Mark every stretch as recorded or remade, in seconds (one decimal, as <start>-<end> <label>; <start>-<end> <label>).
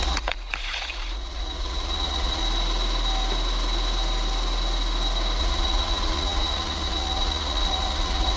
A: 0.0-2.4 remade; 2.4-5.4 recorded; 5.4-8.4 remade